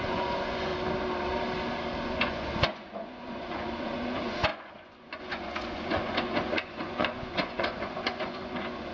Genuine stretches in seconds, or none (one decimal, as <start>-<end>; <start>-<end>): 0.7-2.0